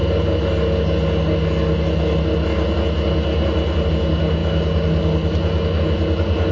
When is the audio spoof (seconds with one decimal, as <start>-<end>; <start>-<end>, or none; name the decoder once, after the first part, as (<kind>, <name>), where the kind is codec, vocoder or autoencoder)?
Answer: none